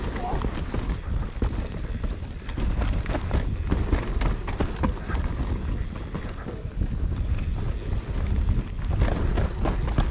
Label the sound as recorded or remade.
recorded